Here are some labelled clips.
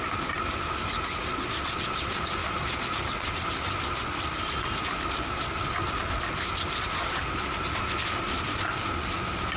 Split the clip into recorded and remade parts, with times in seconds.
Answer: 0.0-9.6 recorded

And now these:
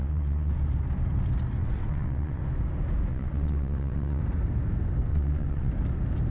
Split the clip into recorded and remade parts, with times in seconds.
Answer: 0.0-0.5 remade; 0.5-1.6 recorded; 1.6-2.4 remade; 2.4-3.1 recorded; 3.1-4.2 remade; 4.2-5.1 recorded; 5.1-5.7 remade; 5.7-6.3 recorded

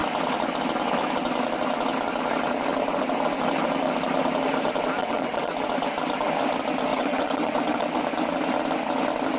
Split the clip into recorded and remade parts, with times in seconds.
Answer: 0.0-5.0 recorded; 5.0-5.5 remade; 5.5-6.9 recorded; 6.9-8.0 remade; 8.0-9.4 recorded

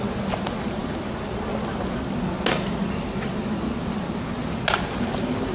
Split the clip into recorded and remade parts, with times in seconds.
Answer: 0.0-5.5 recorded

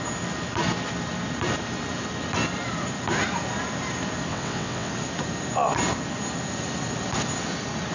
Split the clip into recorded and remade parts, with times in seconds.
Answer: 0.0-4.3 recorded; 4.3-4.9 remade; 4.9-7.9 recorded

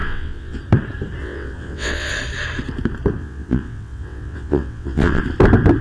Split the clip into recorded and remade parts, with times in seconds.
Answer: 0.0-0.6 remade; 0.6-1.2 recorded; 1.2-2.1 remade; 2.1-3.2 recorded; 3.2-5.2 remade; 5.2-5.8 recorded